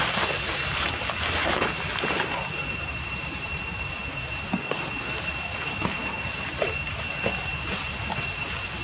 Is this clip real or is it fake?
real